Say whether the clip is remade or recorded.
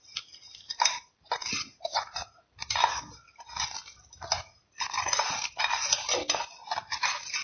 recorded